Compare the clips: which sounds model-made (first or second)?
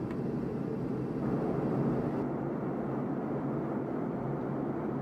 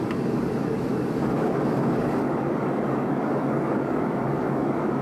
second